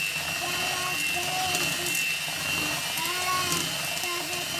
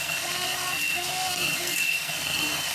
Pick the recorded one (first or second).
first